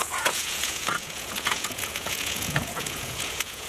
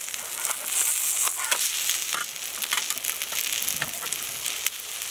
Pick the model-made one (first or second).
first